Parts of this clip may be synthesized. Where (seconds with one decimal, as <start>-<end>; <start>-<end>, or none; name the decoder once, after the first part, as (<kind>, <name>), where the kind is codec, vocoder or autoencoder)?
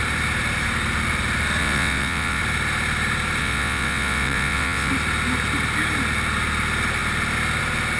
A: 1.6-2.4 (vocoder, WaveNeXt); 3.4-4.9